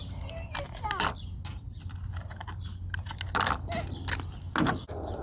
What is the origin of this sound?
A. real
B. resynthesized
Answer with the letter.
A